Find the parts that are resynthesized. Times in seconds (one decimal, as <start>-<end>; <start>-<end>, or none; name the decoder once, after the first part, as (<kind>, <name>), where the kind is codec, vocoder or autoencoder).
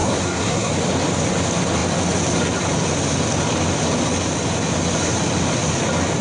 0.0-0.7 (codec, SNAC)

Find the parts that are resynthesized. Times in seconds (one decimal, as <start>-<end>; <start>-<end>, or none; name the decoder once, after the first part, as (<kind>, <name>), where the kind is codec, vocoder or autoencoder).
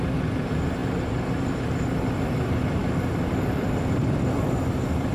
0.8-1.5 (vocoder, BigVGAN v2)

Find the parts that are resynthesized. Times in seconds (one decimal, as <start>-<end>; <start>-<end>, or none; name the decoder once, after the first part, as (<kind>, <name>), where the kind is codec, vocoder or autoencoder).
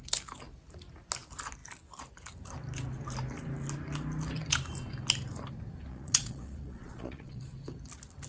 5.9-7.4 (vocoder, Vocos)